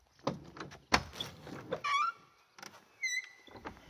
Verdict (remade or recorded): recorded